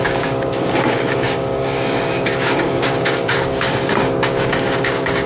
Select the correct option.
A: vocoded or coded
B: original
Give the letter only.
A